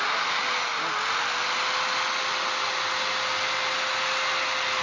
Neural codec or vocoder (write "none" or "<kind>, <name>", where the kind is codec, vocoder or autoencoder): none